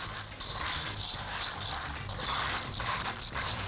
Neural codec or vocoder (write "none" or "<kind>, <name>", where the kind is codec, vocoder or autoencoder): none